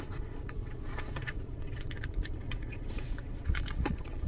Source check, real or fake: fake